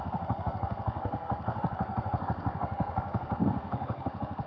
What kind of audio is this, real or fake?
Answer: fake